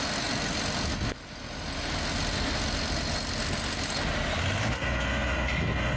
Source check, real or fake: real